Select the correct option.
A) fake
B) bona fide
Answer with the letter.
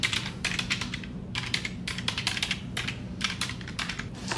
A